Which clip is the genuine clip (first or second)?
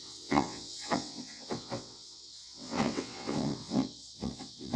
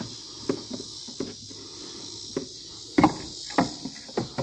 second